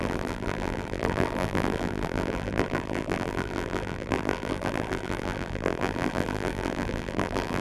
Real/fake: fake